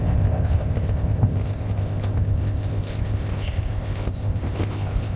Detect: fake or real fake